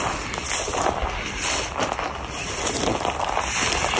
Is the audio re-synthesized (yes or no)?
no